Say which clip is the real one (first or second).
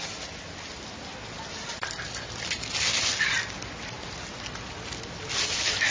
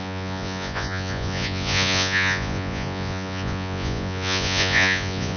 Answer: first